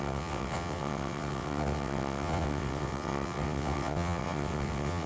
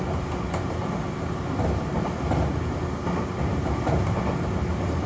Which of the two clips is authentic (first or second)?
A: second